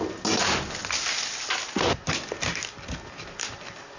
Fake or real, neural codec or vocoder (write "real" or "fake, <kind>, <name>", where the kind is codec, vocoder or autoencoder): real